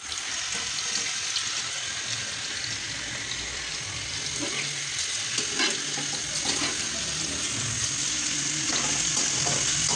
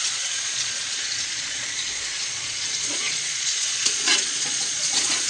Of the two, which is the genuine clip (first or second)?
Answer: first